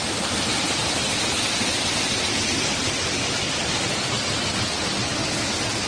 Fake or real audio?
real